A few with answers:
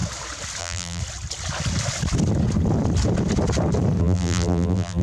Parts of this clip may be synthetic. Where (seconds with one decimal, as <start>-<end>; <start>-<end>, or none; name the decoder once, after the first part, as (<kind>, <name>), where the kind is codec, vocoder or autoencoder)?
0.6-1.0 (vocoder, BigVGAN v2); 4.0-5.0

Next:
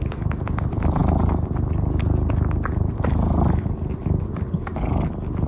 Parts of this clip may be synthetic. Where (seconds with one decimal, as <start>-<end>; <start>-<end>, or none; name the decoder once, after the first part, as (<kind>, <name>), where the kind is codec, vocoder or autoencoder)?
none

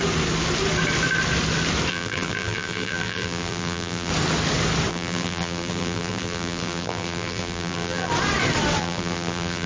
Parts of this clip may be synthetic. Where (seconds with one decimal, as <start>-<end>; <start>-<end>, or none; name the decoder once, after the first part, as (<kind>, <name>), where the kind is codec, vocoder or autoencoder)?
1.9-4.1 (vocoder, BigVGAN v2); 4.9-8.1; 8.8-9.7

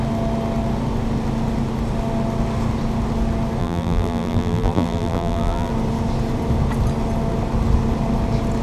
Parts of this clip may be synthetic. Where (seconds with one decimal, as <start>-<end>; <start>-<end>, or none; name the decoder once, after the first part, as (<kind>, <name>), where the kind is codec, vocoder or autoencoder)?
3.6-5.7 (vocoder, BigVGAN v2)

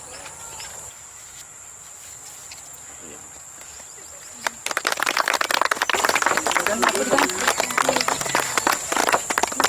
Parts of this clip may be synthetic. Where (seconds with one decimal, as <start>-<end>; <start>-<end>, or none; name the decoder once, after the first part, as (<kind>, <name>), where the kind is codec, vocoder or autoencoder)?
9.0-9.7 (vocoder, BigVGAN v2)

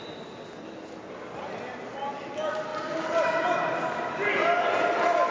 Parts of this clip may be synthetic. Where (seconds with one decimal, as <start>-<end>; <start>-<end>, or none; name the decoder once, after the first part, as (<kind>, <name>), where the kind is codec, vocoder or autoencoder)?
2.7-4.3 (vocoder, BigVGAN v2)